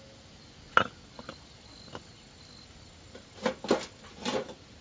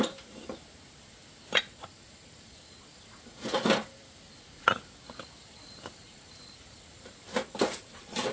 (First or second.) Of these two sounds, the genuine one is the first